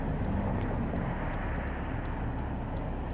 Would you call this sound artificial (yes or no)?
no